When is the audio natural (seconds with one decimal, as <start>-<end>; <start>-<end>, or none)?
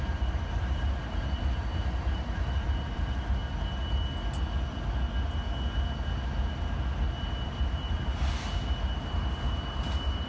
3.4-7.3